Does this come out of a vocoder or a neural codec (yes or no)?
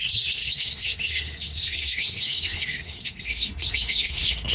yes